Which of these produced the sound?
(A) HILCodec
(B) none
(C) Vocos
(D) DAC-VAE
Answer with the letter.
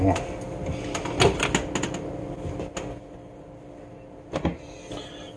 B